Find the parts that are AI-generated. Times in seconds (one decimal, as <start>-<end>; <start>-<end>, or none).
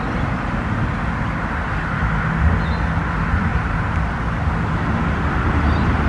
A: 3.5-5.5